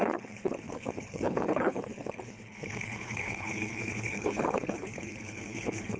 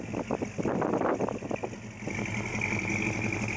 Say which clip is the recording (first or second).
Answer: second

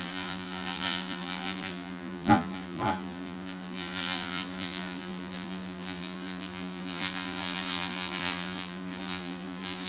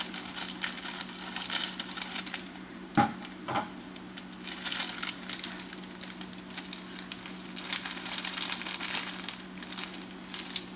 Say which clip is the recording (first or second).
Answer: second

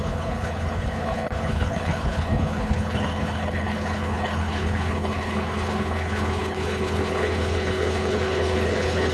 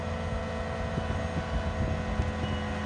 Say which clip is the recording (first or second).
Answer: second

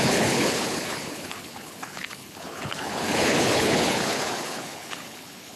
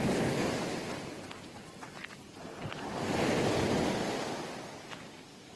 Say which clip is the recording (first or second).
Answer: second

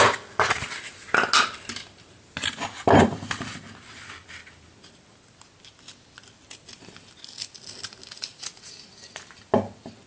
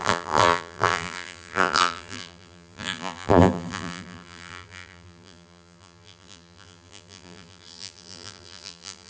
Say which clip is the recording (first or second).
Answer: first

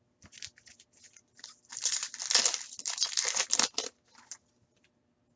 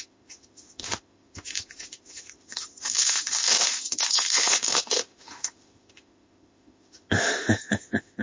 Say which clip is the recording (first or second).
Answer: first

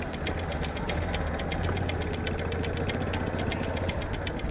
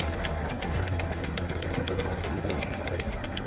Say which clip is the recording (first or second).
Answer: first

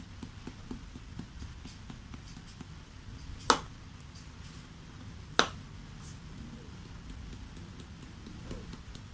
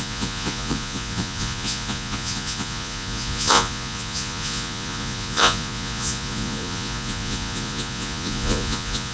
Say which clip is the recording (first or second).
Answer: first